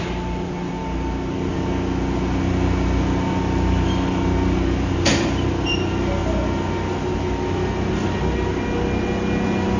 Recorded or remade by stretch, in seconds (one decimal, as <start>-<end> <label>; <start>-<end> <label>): 0.0-9.8 recorded